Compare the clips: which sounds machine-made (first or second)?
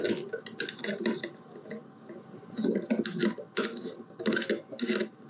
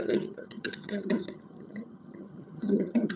second